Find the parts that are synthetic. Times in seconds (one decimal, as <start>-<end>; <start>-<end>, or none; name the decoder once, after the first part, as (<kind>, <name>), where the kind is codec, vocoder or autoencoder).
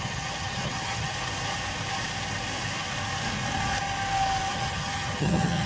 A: 0.0-1.1 (vocoder, HiFi-GAN); 4.5-5.7